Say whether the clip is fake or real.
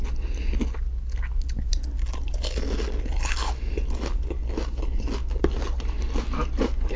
real